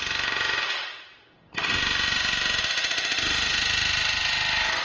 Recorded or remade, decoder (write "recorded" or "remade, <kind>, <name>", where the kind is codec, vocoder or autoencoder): recorded